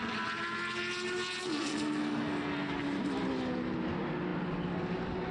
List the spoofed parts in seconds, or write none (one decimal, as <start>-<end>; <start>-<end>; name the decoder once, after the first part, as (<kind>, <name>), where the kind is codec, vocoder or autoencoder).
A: 1.4-2.7 (codec, SNAC)